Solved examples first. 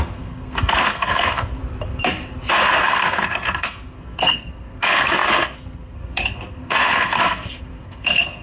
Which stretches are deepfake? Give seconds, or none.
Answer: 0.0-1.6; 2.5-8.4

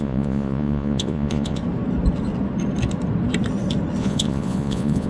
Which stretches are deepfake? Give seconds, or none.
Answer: 0.0-1.6; 4.0-5.1

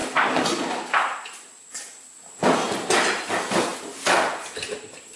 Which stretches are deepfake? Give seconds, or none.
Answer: none

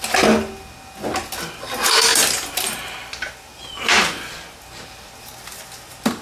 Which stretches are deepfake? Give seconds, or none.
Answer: none